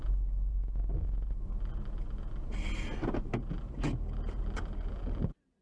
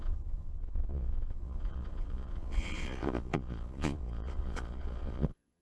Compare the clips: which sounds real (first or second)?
first